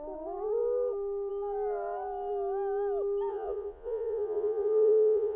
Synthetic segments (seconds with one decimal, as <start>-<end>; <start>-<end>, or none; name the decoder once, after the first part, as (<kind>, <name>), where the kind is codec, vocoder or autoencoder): 3.3-5.4 (vocoder, Vocos)